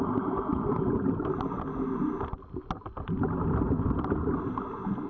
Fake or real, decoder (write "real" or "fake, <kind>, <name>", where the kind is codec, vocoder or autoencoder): real